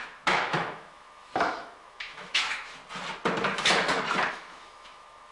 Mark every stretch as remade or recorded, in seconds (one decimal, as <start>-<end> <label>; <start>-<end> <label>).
0.0-2.8 remade; 2.8-4.3 recorded; 4.3-5.3 remade